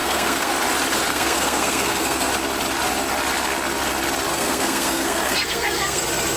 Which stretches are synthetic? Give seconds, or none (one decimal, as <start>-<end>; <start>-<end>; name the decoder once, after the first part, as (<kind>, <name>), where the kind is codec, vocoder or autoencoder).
0.0-0.5 (codec, SNAC); 1.1-2.3; 4.3-6.0